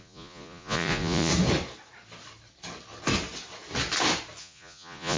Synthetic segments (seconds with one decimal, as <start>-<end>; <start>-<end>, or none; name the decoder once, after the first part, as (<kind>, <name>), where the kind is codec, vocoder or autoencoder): 0.0-1.3 (vocoder, Vocos); 4.4-5.2